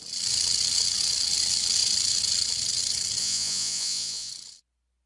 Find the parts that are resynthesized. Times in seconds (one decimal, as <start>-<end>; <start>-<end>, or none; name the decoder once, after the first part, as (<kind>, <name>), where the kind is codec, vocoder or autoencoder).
3.2-4.3 (vocoder, Vocos)